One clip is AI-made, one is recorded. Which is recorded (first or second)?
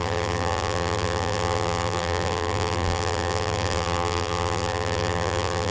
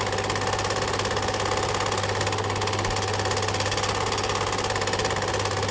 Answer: second